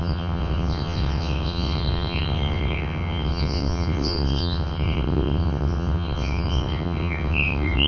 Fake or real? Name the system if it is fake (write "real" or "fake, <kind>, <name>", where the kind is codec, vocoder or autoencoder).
fake, vocoder, WaveNeXt